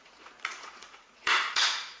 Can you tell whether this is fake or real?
fake